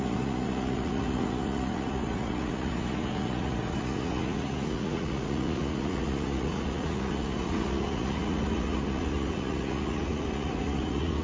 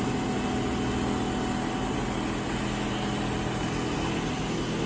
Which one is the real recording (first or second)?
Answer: second